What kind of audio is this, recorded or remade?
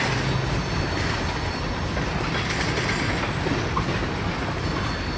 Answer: recorded